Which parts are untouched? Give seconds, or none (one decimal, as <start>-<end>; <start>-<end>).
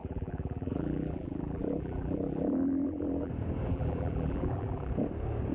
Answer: 3.3-3.7; 4.9-5.5